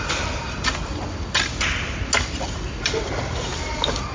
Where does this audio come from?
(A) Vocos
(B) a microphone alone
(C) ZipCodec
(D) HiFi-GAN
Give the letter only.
B